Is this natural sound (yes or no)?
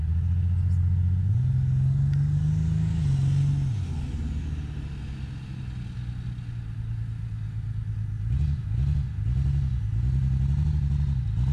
yes